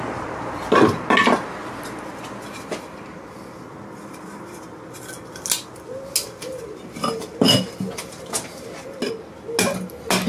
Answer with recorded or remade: recorded